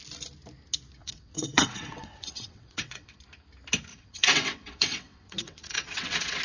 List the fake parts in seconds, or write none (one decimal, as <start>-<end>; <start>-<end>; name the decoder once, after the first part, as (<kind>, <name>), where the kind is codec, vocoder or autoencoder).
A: 1.0-3.2 (vocoder, WaveNeXt); 3.9-6.4